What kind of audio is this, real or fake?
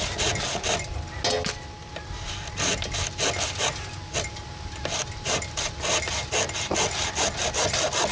real